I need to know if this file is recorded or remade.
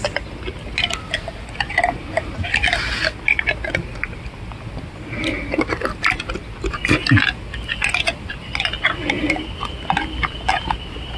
recorded